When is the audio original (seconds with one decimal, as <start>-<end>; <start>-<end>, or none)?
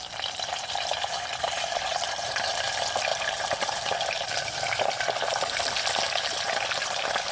0.0-3.1; 4.7-7.3